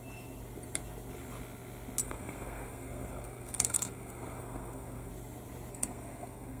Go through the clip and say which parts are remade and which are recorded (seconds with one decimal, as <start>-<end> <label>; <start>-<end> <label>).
0.0-2.0 recorded; 2.0-5.1 remade; 5.1-5.7 recorded; 5.7-6.6 remade